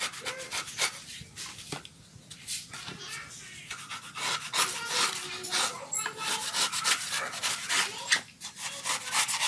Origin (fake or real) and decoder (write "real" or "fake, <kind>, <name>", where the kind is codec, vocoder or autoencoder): real